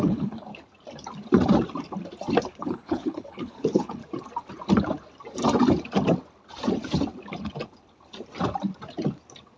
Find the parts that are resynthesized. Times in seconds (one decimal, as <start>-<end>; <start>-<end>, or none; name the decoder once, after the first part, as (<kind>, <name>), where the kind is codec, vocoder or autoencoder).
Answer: 0.0-0.5 (codec, HILCodec); 2.6-4.0